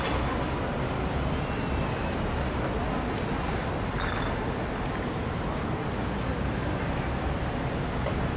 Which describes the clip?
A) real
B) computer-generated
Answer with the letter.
A